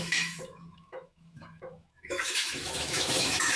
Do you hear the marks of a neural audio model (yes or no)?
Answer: yes